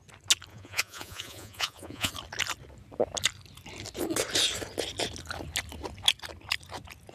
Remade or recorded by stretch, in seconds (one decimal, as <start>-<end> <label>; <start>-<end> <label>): 0.0-0.5 recorded; 0.5-2.1 remade; 2.1-7.1 recorded